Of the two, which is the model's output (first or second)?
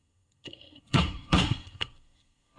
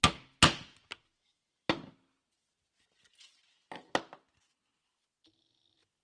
first